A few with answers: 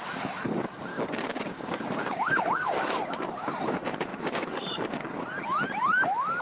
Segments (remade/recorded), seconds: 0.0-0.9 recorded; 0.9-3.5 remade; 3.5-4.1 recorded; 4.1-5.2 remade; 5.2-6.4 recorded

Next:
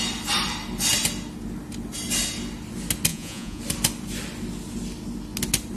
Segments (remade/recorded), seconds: 0.0-3.1 recorded; 3.1-3.6 remade; 3.6-5.8 recorded

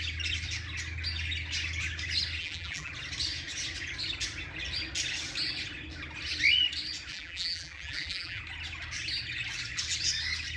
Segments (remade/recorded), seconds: 0.0-2.4 recorded; 2.4-2.9 remade; 2.9-7.1 recorded; 7.1-8.4 remade; 8.4-10.6 recorded

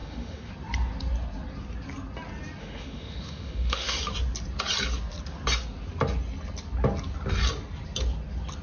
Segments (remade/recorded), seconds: 0.0-0.5 remade; 0.5-2.6 recorded; 2.6-4.0 remade; 4.0-8.6 recorded

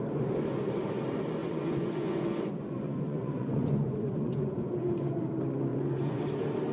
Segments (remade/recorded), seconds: 0.0-1.4 recorded; 1.4-5.2 remade; 5.2-5.7 recorded; 5.7-6.2 remade; 6.2-6.7 recorded

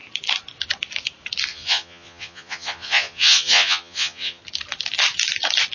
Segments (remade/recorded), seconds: 0.0-1.5 recorded; 1.5-4.4 remade; 4.4-5.7 recorded

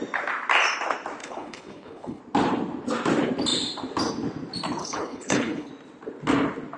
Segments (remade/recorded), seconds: 0.0-1.2 recorded; 1.2-2.2 remade; 2.2-4.8 recorded; 4.8-5.7 remade; 5.7-6.8 recorded